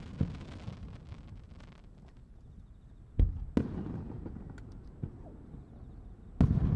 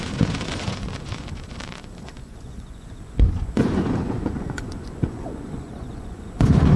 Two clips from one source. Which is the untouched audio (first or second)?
first